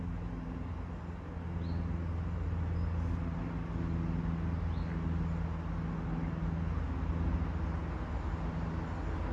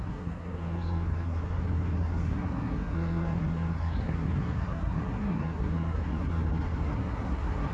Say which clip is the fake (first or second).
second